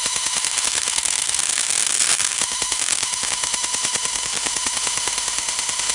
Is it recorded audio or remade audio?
remade